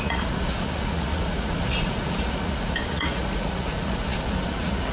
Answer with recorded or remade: remade